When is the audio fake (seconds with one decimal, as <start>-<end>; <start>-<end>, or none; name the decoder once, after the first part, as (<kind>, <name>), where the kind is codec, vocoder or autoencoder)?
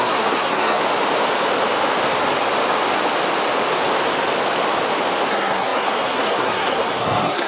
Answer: 0.0-0.8 (codec, SNAC); 5.3-7.5